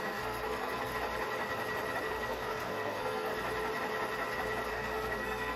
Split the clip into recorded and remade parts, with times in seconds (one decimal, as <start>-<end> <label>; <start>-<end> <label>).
0.0-0.9 remade; 0.9-2.0 recorded; 2.0-3.3 remade; 3.3-4.7 recorded; 4.7-5.6 remade